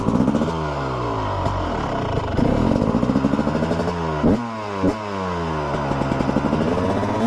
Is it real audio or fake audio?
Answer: real